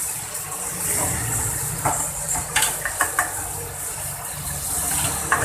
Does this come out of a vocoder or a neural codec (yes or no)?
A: yes